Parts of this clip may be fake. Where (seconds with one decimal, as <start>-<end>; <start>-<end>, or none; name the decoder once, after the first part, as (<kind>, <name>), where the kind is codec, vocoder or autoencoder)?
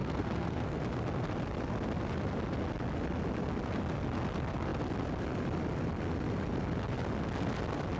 0.0-0.8 (codec, SNAC)